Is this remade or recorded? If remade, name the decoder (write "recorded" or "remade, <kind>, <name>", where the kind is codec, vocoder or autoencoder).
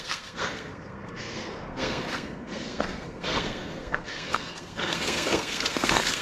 remade, codec, SNAC